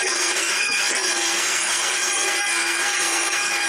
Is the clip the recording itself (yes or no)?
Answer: no